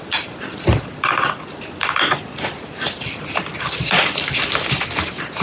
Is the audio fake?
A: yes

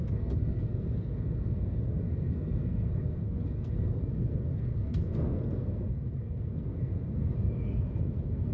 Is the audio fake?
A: yes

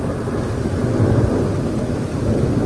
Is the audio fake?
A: no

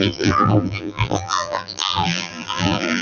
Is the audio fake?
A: yes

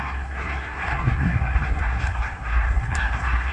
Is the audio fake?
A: yes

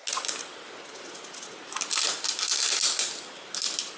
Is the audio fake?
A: no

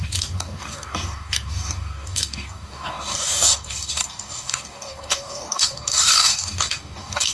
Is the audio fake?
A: yes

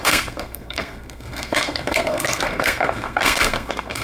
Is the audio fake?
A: yes